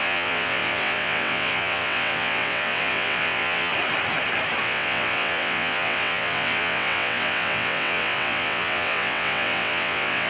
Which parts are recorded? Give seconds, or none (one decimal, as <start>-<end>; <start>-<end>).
3.7-4.6